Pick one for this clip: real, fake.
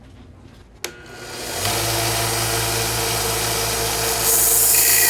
real